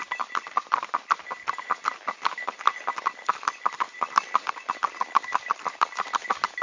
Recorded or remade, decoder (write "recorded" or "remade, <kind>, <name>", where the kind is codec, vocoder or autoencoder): recorded